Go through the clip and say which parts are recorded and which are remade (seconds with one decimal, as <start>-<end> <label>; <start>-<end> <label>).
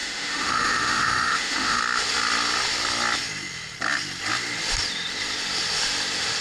0.0-1.8 remade; 1.8-6.4 recorded